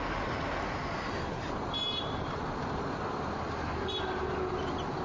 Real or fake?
real